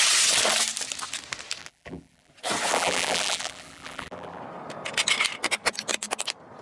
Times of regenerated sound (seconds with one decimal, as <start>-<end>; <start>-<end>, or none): 1.6-2.3; 2.7-4.4